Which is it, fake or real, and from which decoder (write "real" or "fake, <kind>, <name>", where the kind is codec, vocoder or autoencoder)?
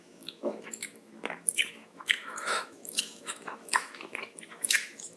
fake, autoencoder, DAC-VAE